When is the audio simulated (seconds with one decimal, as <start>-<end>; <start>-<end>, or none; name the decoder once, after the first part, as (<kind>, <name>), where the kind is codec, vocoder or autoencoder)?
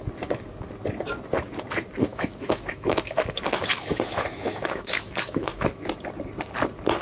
2.1-5.8 (autoencoder, DAC-VAE)